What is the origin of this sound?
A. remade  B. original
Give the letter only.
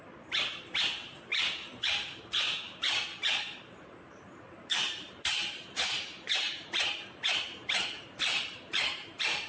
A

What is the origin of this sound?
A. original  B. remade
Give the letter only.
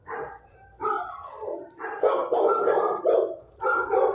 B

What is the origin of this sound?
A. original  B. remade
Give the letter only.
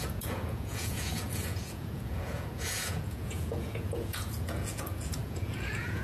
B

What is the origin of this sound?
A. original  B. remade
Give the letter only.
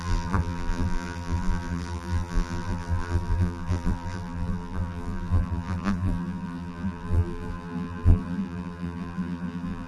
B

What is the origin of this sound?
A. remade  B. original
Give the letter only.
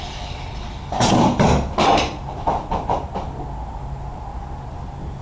B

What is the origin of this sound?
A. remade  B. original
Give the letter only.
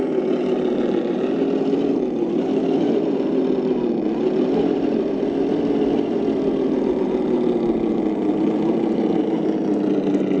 B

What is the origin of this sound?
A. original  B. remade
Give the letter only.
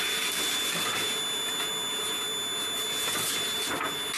A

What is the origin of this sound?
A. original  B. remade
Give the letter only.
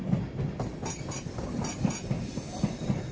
A